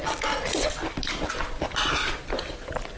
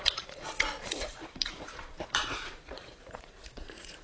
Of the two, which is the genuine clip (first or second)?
first